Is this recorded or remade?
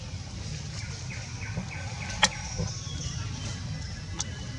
recorded